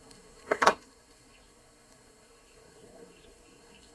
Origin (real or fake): fake